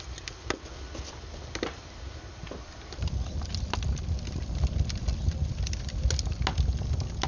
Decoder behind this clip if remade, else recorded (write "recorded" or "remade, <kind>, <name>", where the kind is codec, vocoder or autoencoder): recorded